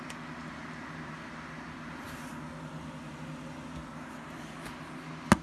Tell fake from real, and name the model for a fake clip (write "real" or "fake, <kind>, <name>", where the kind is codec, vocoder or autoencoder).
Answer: real